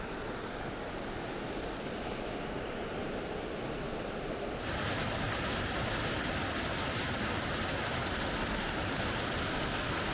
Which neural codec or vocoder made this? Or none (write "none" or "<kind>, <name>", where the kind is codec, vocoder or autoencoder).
none